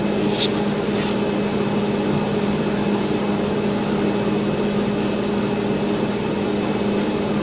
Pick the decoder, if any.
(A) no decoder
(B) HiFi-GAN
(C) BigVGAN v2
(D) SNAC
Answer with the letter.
A